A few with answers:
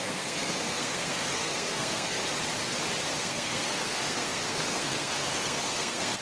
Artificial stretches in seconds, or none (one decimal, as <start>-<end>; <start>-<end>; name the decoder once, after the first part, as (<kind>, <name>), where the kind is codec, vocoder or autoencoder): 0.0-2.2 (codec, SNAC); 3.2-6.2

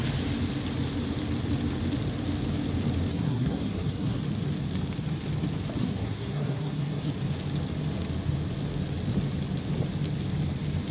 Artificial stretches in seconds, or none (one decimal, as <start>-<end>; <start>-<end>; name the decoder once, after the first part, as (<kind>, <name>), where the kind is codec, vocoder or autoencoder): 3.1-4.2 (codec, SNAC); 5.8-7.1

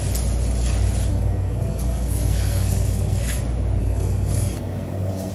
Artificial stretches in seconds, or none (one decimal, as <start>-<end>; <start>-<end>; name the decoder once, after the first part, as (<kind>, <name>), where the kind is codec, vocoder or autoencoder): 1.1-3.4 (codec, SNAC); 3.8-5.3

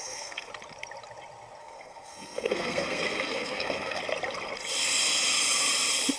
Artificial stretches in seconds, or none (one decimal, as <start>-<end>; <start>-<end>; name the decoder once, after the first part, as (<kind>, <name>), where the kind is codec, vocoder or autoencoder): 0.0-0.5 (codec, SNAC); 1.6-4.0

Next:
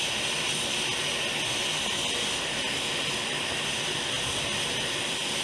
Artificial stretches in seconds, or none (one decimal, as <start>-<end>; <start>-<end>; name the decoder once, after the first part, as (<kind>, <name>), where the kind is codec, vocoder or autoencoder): none

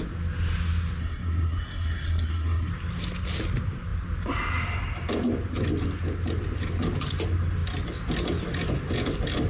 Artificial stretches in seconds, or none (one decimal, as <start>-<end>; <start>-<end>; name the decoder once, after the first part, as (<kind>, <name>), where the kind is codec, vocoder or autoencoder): 1.0-2.7 (codec, SNAC)